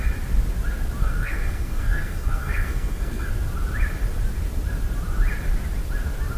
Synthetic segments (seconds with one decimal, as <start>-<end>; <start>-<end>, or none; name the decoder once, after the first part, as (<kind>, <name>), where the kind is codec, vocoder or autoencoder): 1.0-3.3 (codec, SNAC)